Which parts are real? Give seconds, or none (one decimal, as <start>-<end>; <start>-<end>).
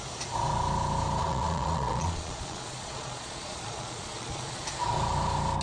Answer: 0.0-1.2; 4.6-5.6